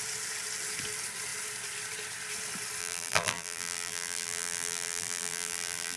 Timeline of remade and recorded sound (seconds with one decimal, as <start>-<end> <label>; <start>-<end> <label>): 0.0-2.8 recorded; 2.8-6.0 remade